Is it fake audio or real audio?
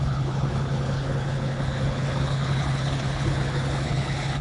fake